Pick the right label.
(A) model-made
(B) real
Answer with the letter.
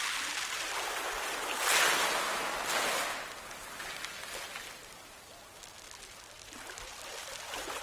B